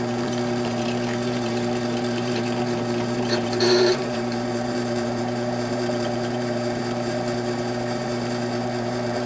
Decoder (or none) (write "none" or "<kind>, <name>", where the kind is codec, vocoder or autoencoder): vocoder, BigVGAN v2